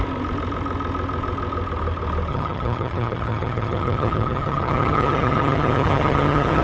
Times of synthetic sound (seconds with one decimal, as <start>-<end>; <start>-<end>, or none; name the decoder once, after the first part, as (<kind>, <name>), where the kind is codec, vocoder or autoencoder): 2.3-6.6 (vocoder, HiFi-GAN)